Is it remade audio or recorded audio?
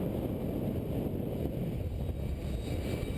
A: recorded